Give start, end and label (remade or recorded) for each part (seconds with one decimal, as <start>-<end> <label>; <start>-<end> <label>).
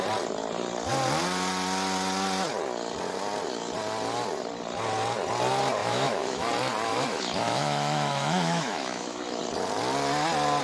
0.0-5.8 recorded; 5.8-6.5 remade; 6.5-6.9 recorded; 6.9-9.4 remade; 9.4-10.6 recorded